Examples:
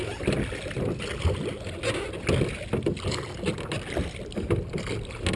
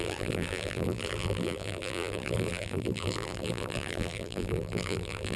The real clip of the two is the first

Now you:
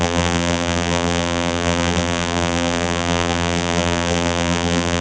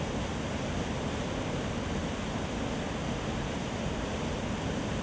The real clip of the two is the second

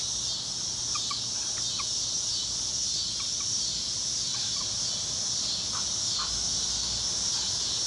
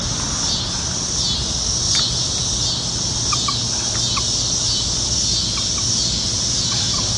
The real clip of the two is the second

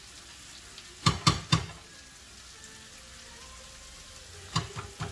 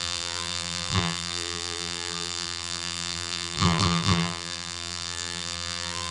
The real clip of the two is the first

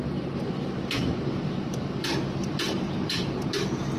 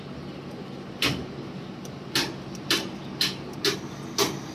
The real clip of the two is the second